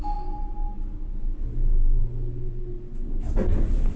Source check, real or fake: real